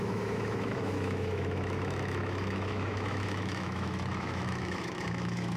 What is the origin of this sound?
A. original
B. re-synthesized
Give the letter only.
B